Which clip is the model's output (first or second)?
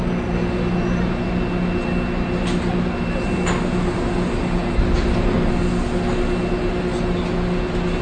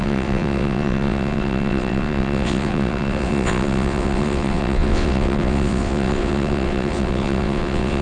second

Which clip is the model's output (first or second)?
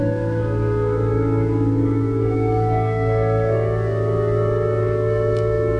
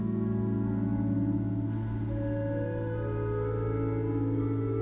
first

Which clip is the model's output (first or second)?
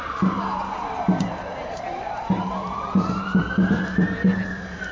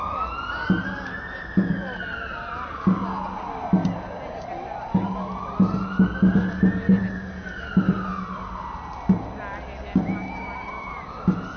first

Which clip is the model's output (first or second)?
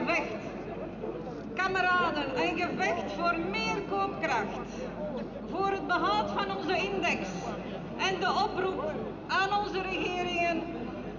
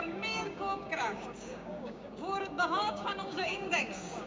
second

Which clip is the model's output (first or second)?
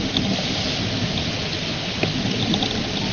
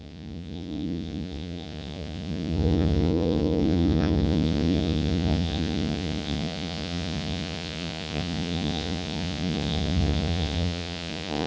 second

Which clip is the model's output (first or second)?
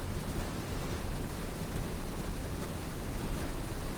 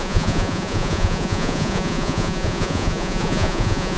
second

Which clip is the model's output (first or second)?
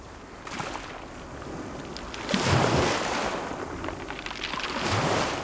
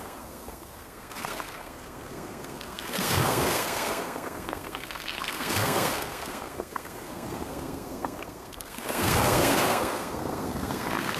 second